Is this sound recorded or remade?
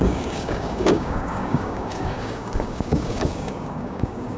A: remade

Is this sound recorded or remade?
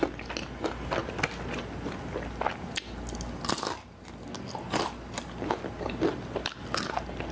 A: recorded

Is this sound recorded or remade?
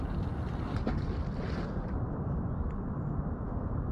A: recorded